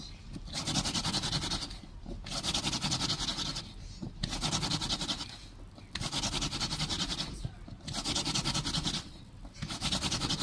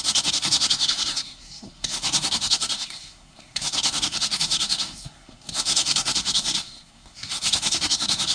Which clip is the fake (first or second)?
second